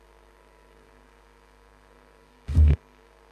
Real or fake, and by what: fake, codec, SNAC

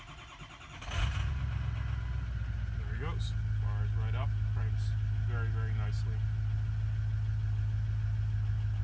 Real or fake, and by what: real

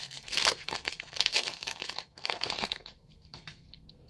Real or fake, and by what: fake, codec, SNAC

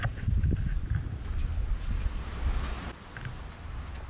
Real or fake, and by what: real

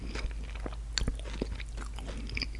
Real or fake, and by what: real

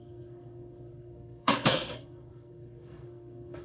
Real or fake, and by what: fake, codec, SNAC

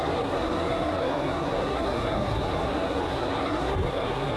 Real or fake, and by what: fake, codec, SNAC